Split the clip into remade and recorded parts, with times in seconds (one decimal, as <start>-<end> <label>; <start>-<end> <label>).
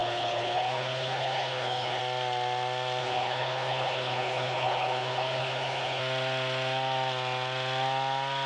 0.0-2.0 remade; 2.0-3.0 recorded; 3.0-6.0 remade; 6.0-8.5 recorded